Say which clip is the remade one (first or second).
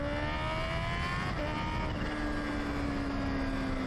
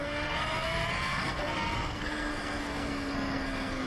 second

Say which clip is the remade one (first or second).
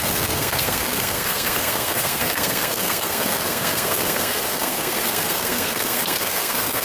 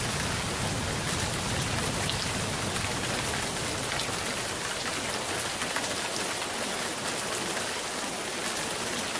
first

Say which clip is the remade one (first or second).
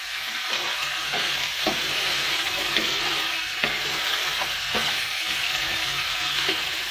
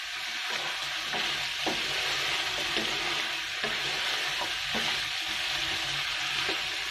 first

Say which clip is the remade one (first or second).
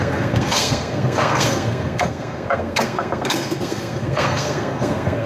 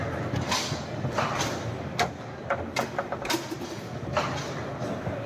first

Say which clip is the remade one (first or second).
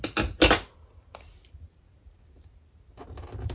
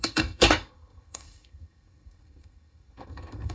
second